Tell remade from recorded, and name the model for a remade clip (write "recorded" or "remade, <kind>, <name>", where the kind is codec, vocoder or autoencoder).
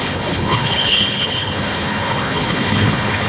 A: remade, codec, HILCodec